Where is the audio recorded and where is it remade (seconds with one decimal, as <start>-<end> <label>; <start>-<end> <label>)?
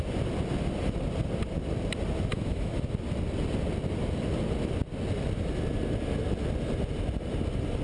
0.0-2.3 recorded; 2.3-2.8 remade; 2.8-7.8 recorded